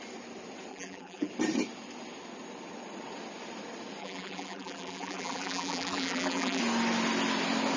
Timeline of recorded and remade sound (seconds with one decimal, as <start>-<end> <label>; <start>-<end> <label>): 0.0-0.7 recorded; 0.7-1.3 remade; 1.3-4.0 recorded; 4.0-6.6 remade; 6.6-7.8 recorded